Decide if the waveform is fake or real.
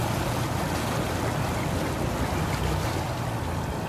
real